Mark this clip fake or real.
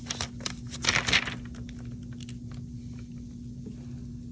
real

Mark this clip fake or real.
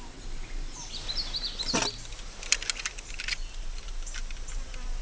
real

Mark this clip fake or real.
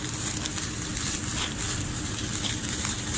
fake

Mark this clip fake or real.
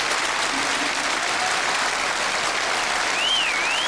real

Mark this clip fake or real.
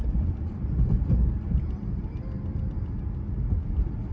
real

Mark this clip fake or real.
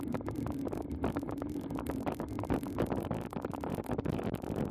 real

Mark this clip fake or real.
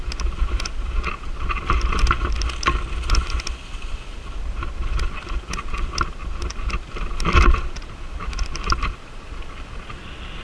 real